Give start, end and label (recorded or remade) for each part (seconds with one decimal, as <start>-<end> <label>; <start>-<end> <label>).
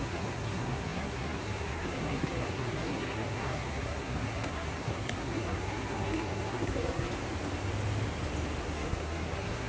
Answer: 0.0-7.1 remade; 7.1-8.6 recorded; 8.6-9.7 remade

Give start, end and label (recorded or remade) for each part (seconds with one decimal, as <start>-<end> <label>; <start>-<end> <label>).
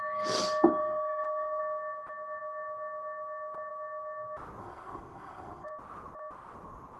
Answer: 0.0-0.8 recorded; 0.8-1.6 remade; 1.6-4.6 recorded; 4.6-5.7 remade; 5.7-7.0 recorded